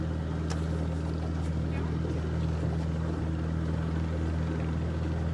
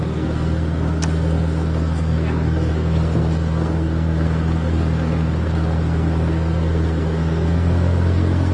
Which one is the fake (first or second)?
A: second